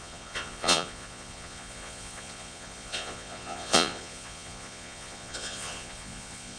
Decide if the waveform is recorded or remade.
remade